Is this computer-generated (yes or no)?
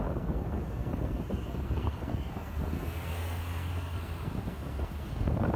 yes